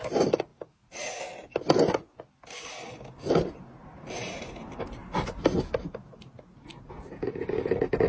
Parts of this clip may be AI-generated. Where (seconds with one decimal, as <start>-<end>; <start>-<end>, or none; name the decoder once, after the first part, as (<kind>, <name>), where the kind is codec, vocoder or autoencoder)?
5.0-5.6 (vocoder, BigVGAN v2)